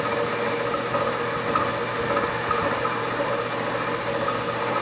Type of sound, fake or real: real